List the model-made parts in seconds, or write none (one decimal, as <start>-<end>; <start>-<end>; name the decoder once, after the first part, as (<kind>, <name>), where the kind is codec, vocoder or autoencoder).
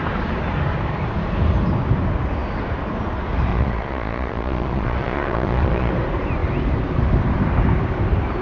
3.5-5.9 (vocoder, Vocos)